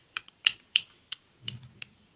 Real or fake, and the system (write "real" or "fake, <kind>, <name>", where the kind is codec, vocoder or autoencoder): fake, vocoder, Vocos